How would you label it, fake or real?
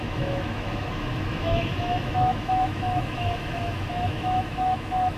fake